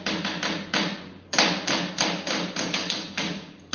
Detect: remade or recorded recorded